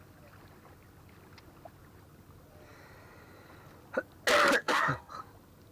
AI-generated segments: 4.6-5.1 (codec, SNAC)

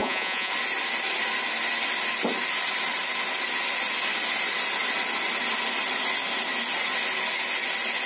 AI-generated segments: 0.0-0.5 (vocoder, Vocos)

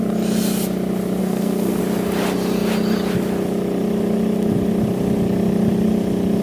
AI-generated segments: 1.2-1.8 (codec, SNAC)

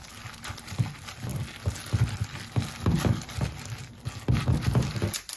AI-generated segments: none